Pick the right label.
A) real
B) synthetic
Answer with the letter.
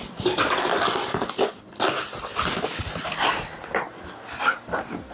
A